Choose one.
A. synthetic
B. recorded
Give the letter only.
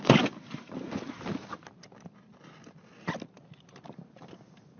B